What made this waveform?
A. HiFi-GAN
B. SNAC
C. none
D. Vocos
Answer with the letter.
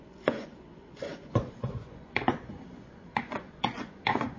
D